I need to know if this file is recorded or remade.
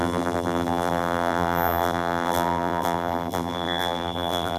remade